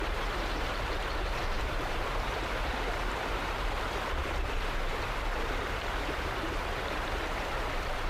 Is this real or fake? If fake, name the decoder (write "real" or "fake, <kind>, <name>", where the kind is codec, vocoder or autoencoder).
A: fake, vocoder, BigVGAN v2